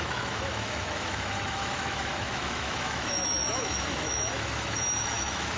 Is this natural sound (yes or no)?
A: no